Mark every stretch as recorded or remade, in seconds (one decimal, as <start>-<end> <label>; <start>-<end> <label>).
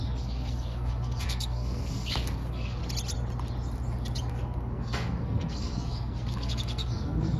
0.0-2.8 remade; 2.8-4.3 recorded; 4.3-7.4 remade